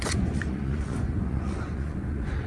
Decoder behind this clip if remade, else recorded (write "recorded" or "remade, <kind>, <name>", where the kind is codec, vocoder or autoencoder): remade, vocoder, Vocos